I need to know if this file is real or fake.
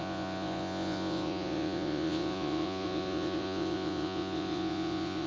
fake